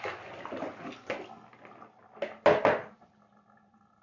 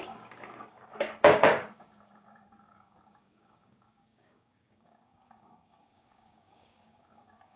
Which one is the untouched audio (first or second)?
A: first